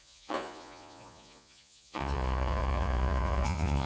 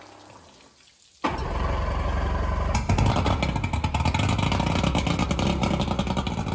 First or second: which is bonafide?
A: second